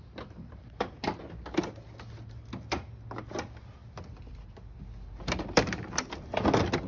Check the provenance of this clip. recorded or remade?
recorded